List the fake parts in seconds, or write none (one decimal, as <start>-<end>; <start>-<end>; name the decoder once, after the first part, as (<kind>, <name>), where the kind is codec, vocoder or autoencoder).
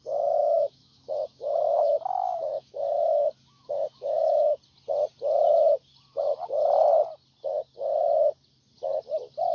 0.4-4.6 (autoencoder, DAC-VAE)